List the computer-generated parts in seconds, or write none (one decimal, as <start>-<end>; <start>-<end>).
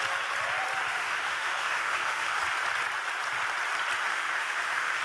0.9-2.4; 4.1-5.0